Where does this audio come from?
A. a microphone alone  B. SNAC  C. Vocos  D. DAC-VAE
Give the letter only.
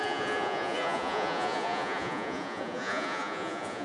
C